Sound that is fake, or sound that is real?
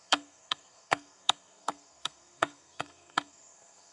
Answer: fake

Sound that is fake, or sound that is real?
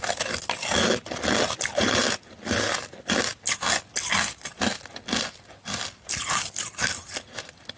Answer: real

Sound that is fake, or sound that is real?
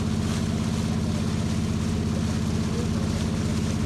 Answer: real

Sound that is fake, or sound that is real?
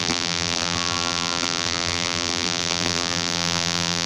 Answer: fake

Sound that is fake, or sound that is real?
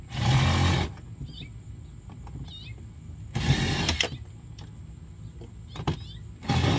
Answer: real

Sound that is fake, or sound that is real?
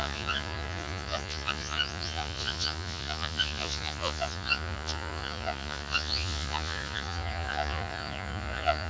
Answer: fake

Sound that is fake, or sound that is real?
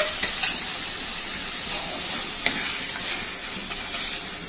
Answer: real